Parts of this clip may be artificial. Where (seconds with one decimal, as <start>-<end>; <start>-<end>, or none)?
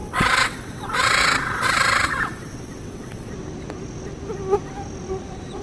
0.0-3.3